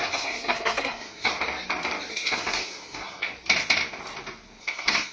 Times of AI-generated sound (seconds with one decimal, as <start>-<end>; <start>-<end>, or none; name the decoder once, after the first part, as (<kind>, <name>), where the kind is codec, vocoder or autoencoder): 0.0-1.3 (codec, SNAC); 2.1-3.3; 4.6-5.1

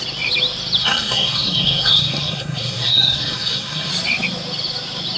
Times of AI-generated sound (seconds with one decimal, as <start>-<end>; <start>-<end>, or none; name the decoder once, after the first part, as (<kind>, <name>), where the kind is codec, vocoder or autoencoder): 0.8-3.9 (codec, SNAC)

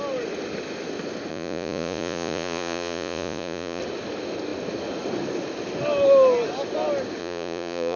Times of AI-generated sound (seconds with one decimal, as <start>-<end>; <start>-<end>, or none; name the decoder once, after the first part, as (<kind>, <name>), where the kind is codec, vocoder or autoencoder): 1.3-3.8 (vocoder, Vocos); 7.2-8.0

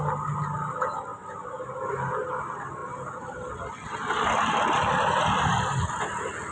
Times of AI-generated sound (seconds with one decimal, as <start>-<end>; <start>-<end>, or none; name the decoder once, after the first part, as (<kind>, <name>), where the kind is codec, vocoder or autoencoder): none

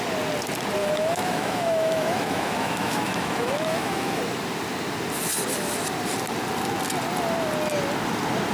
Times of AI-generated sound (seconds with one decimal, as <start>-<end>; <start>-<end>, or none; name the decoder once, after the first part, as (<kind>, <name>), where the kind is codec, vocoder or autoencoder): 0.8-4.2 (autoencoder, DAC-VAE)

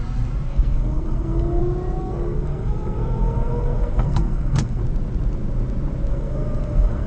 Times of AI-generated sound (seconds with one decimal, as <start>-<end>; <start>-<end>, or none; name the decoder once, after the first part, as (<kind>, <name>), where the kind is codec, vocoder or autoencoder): 0.5-1.6 (codec, SNAC); 2.0-4.8; 6.1-7.1

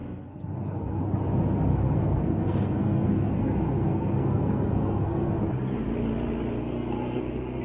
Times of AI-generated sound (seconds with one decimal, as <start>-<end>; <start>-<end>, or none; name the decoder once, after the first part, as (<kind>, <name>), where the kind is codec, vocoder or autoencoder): 0.0-1.0 (codec, SNAC); 1.7-5.4; 6.6-7.6